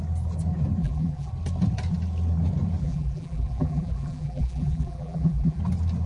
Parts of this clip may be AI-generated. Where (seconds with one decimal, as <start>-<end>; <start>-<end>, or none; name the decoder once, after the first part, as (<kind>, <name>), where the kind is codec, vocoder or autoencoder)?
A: 0.8-1.3 (vocoder, BigVGAN v2); 2.8-5.6